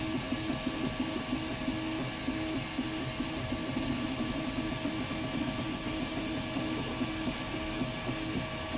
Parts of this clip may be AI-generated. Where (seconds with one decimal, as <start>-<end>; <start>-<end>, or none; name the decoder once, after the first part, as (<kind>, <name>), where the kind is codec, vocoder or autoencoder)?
none